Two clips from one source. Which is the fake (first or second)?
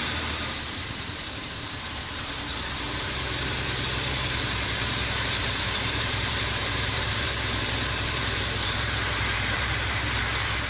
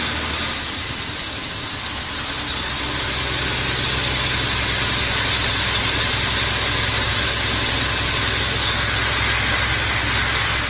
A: first